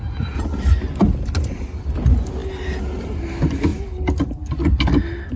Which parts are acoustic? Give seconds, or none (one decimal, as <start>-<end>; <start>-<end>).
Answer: 0.0-5.4